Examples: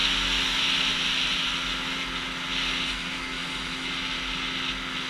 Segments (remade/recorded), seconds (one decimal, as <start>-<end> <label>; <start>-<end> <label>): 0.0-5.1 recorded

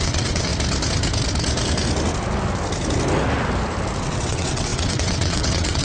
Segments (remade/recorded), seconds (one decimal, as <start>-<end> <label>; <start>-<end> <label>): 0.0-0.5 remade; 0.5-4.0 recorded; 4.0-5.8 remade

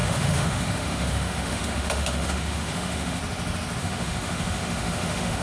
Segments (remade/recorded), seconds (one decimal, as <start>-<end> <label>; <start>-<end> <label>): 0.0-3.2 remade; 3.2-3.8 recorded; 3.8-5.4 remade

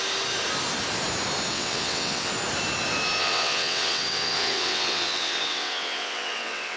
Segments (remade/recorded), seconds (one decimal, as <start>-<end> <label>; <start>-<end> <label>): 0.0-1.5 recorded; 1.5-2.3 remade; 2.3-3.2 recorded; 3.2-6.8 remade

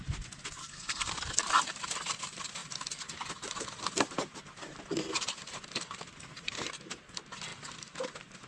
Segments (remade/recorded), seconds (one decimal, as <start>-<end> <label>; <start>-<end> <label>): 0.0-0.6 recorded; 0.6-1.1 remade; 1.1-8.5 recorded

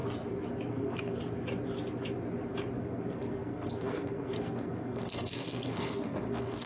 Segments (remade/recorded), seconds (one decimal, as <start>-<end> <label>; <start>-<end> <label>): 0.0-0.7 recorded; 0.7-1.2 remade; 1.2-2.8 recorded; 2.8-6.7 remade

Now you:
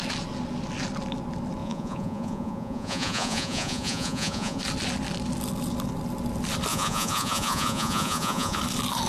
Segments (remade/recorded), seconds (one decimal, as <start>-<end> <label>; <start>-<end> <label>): 0.0-1.6 recorded; 1.6-4.6 remade; 4.6-6.7 recorded; 6.7-8.6 remade; 8.6-9.1 recorded

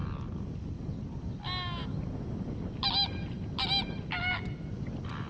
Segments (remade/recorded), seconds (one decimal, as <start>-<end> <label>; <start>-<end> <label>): 0.0-5.3 recorded